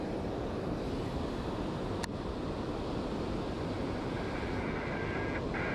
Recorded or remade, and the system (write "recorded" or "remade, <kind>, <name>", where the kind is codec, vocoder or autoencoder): recorded